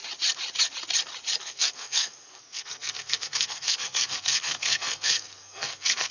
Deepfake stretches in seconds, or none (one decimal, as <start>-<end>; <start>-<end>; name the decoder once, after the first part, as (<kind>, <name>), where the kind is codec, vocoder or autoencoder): 1.4-6.1 (codec, SNAC)